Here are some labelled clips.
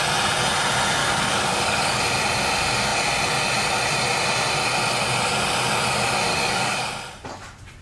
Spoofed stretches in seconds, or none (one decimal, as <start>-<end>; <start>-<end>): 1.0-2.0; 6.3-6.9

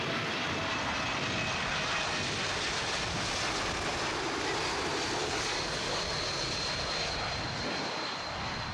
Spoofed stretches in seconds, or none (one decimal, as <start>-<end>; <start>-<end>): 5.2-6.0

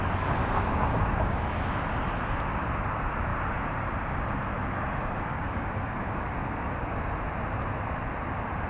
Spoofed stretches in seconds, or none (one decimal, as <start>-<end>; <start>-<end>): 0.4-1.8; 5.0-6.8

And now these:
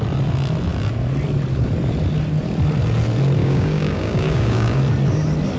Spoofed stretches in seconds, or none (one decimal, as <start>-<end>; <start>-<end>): 3.4-4.8